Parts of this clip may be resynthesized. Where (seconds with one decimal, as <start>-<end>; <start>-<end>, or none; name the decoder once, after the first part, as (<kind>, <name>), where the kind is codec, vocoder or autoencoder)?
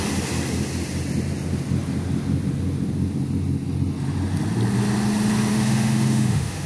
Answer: 5.5-6.7 (autoencoder, DAC-VAE)